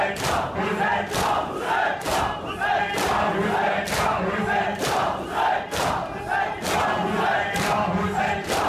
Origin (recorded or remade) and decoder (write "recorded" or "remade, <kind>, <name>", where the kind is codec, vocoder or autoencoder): recorded